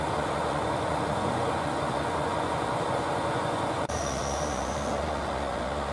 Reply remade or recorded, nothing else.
remade